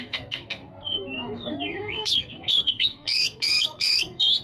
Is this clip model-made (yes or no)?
yes